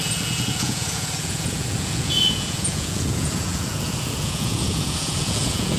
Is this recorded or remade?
remade